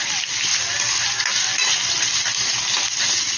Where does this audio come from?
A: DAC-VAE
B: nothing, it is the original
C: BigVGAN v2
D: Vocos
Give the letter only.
B